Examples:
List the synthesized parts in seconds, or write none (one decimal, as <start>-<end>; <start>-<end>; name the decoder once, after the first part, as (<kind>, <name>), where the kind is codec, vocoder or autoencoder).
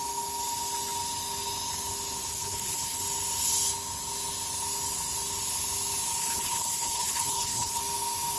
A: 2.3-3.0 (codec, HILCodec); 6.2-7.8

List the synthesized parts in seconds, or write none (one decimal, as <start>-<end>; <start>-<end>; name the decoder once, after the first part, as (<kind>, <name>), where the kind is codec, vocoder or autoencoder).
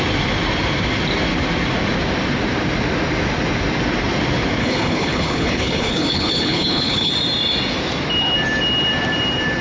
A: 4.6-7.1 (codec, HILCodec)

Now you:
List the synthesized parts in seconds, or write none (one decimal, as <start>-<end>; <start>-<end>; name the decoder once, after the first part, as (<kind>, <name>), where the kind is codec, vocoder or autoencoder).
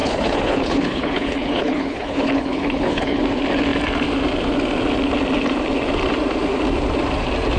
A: 0.0-3.2 (codec, HILCodec)